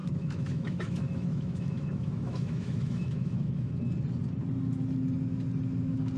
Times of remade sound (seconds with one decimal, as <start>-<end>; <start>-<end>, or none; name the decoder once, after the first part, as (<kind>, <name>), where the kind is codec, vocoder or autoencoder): 0.0-3.7 (autoencoder, DAC-VAE)